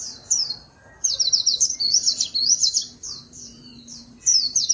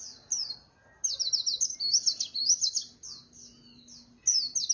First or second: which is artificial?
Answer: first